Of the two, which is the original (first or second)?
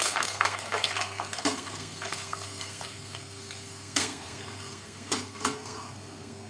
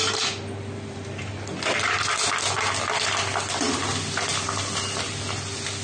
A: second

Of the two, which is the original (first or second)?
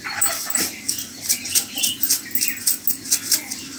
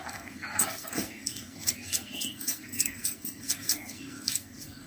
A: first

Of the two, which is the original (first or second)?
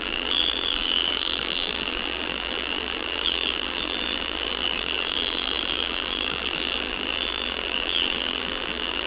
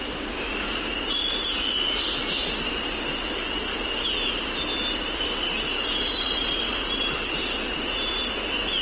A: second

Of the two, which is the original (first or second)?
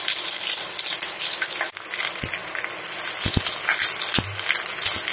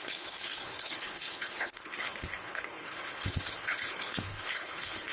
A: first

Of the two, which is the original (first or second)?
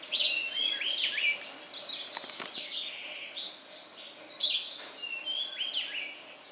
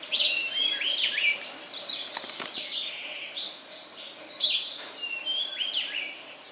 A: first